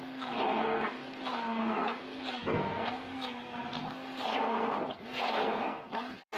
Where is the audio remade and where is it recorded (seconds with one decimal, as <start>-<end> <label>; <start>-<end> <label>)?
0.0-6.4 remade